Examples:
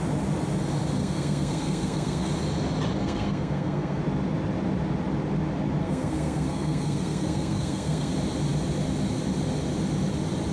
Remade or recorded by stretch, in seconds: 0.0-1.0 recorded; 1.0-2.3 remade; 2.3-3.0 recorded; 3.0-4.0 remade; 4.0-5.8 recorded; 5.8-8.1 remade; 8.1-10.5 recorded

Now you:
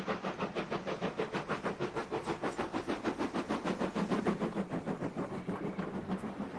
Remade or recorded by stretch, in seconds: 0.0-6.6 recorded

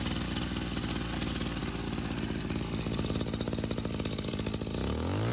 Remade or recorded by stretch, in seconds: 0.0-5.3 recorded